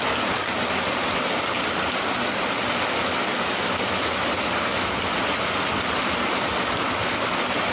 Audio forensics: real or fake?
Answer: real